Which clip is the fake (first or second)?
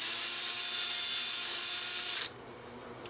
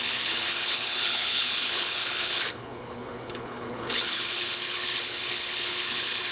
second